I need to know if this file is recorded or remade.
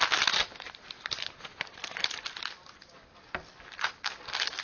recorded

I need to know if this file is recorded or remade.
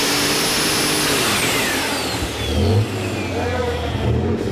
recorded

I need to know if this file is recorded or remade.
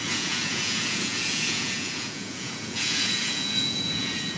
remade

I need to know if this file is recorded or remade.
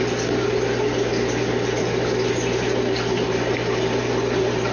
recorded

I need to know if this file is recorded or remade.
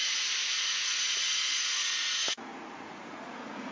remade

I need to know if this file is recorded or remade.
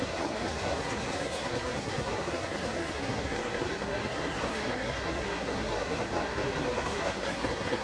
remade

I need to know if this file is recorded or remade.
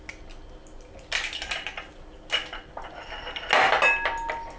recorded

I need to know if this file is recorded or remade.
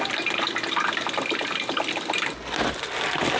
recorded